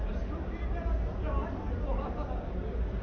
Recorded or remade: recorded